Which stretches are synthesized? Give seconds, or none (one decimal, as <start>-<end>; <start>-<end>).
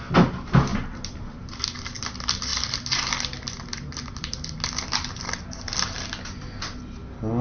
none